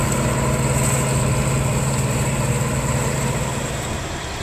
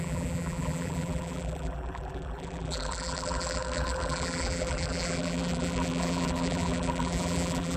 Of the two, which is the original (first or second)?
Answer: first